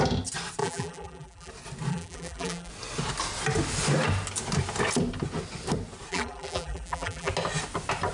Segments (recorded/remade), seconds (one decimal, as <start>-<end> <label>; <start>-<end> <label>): 0.0-0.6 recorded; 0.6-1.5 remade; 1.5-1.9 recorded; 1.9-2.7 remade; 2.7-6.1 recorded; 6.1-7.3 remade; 7.3-8.1 recorded